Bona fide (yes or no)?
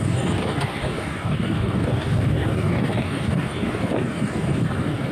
no